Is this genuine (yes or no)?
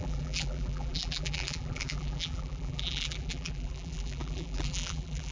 no